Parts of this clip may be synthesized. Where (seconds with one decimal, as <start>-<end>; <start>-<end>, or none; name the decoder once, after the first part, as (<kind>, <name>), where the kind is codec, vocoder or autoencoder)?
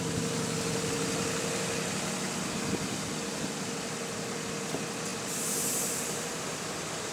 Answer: none